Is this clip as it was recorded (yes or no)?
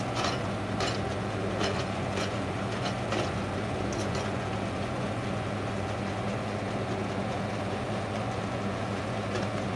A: no